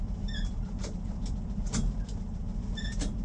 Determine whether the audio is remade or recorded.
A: remade